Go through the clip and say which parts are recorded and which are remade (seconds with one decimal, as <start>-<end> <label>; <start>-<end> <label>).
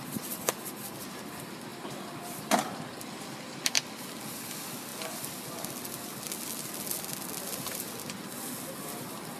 0.0-4.9 remade; 4.9-9.4 recorded